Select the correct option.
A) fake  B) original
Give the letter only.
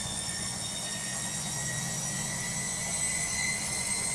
A